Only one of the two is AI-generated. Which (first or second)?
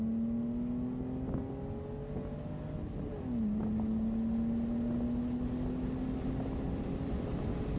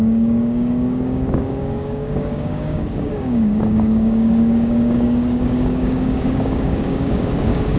second